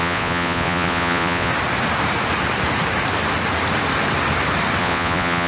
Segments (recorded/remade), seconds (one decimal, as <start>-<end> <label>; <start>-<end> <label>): 0.0-1.5 remade; 1.5-4.8 recorded; 4.8-5.5 remade